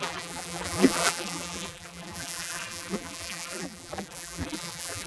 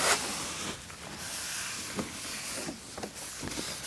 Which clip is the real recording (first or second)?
second